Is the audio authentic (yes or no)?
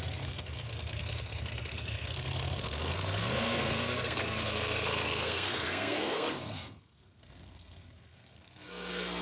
no